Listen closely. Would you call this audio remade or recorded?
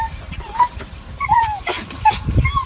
remade